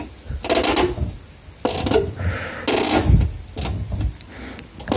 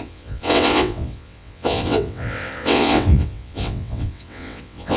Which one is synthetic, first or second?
second